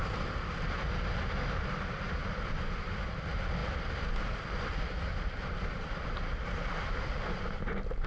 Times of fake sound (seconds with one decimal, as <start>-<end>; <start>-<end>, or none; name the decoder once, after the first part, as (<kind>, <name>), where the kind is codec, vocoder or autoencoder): none